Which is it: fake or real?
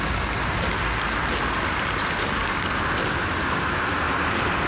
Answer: real